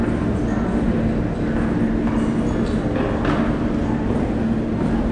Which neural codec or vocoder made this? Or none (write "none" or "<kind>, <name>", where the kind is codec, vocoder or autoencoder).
none